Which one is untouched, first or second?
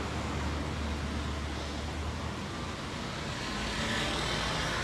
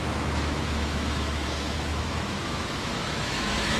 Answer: first